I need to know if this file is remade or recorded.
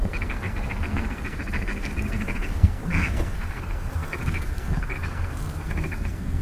remade